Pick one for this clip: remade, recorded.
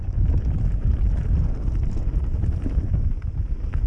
recorded